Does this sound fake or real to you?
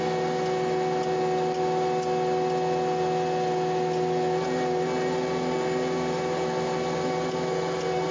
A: real